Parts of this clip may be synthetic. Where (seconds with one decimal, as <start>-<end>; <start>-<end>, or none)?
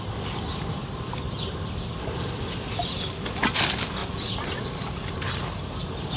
4.0-6.2